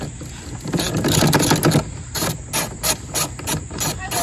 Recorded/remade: recorded